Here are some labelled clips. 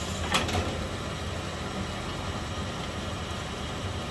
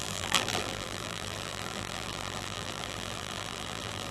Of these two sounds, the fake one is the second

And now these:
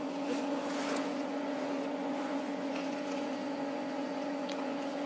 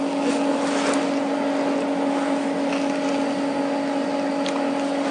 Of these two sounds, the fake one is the first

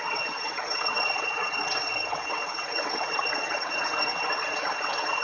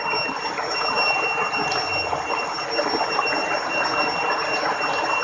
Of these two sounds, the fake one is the first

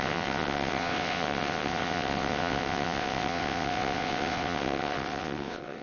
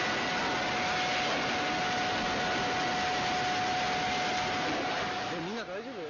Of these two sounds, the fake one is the first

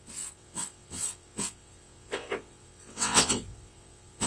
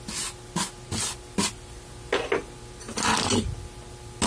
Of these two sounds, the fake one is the first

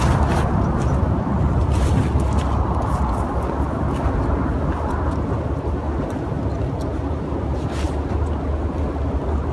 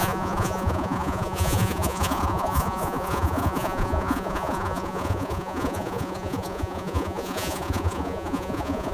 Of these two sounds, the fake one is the second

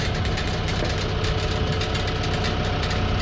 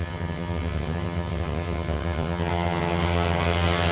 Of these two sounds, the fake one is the second